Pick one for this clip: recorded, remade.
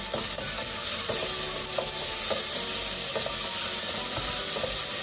recorded